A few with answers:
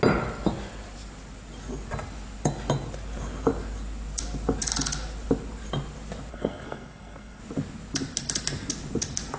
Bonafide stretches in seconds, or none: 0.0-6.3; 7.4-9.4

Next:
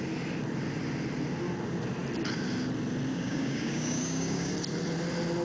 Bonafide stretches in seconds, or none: 0.0-3.1; 4.5-5.4

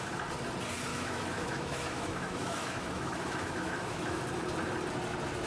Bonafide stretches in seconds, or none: 0.0-0.9; 4.2-5.5

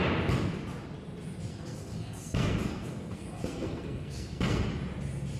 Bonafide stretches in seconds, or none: 0.0-1.5; 4.7-5.4

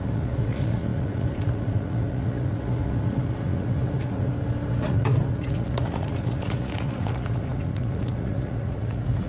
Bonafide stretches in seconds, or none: 4.3-4.8